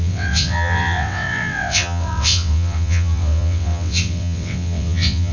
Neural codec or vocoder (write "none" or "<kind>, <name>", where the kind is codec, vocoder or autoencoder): vocoder, WaveNeXt